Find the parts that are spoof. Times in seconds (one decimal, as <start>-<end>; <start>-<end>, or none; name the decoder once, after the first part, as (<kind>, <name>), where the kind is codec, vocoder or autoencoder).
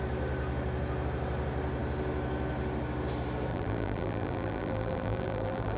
3.5-5.8 (vocoder, BigVGAN v2)